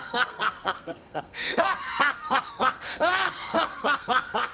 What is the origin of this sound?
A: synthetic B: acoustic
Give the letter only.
A